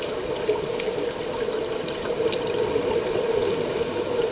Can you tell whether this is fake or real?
real